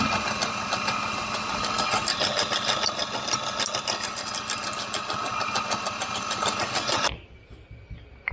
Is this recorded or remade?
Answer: recorded